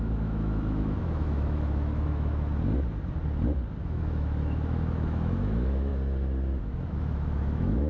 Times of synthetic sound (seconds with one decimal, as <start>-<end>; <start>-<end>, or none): 0.0-2.5; 3.8-5.9; 6.6-7.9